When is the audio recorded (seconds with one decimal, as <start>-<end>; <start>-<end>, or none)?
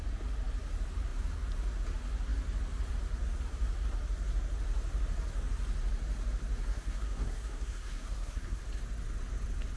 0.0-6.7; 8.6-9.8